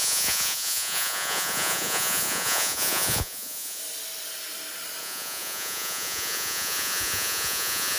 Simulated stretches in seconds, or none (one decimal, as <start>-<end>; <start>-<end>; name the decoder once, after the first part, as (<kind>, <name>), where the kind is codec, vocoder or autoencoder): 0.0-3.8 (vocoder, Vocos); 5.0-8.0